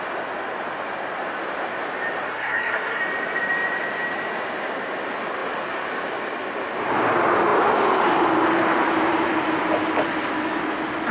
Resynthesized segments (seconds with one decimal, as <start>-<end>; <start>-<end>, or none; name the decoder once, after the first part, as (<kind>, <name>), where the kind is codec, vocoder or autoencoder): 2.3-3.0 (codec, SNAC)